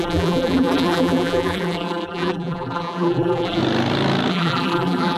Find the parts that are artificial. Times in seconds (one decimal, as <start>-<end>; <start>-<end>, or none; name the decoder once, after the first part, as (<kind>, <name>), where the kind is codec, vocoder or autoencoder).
0.0-3.6 (vocoder, BigVGAN v2); 4.3-5.2